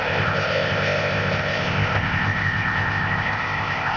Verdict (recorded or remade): remade